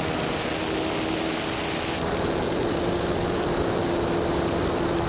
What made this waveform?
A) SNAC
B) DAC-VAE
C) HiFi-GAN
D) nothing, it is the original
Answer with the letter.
D